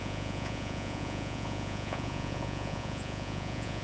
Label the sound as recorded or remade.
remade